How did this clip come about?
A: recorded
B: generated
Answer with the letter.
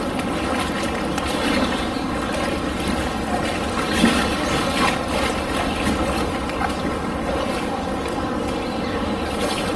B